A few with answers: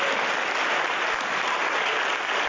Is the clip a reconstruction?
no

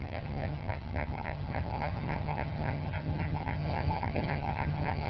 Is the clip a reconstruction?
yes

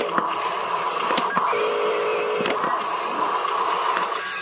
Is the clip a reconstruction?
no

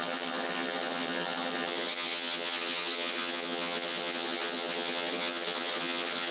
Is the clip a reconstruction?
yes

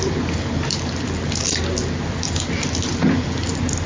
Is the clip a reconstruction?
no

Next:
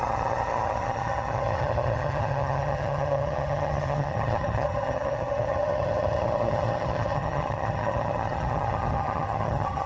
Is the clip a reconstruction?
yes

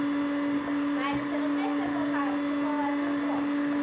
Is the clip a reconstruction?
no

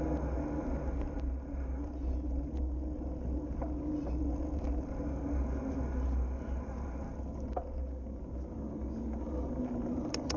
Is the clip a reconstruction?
no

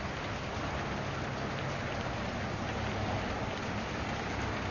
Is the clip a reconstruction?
no